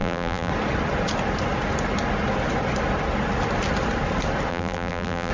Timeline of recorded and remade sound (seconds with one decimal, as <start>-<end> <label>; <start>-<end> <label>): 0.0-0.5 remade; 0.5-4.5 recorded; 4.5-5.3 remade